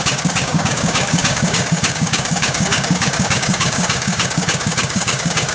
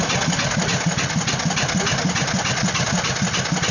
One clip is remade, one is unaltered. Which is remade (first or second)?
first